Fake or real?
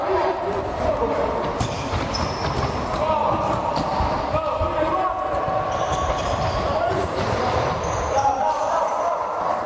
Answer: fake